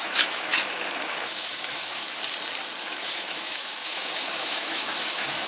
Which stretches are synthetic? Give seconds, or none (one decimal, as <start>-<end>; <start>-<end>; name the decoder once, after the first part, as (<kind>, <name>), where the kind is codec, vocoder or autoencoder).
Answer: 0.0-2.2 (autoencoder, DAC-VAE); 2.8-5.5